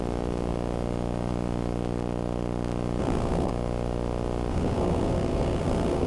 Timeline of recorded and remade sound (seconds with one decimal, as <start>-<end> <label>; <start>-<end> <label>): 0.0-3.0 recorded; 3.0-3.5 remade; 3.5-4.5 recorded; 4.5-6.1 remade